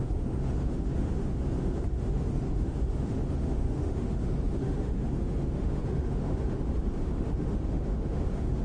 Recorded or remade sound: remade